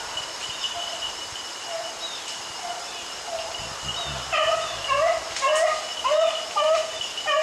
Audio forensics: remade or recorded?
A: recorded